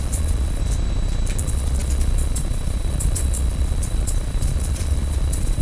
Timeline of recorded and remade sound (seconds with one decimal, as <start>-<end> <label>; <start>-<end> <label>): 0.0-0.6 remade; 0.6-1.4 recorded; 1.4-5.6 remade